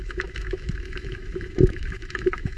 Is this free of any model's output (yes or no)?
no